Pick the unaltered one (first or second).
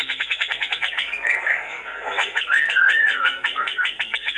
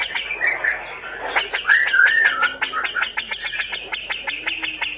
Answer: second